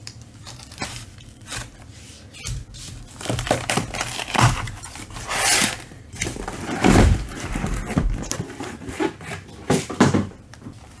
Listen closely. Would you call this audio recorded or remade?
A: remade